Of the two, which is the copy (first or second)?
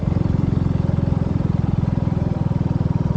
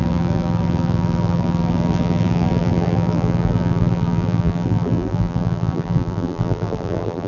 second